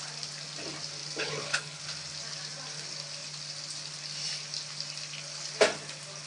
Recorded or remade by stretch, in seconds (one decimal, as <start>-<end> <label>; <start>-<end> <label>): 0.0-1.0 recorded; 1.0-1.8 remade; 1.8-6.3 recorded